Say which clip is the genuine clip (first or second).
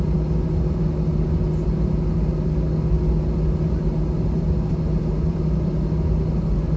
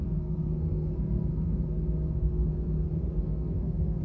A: first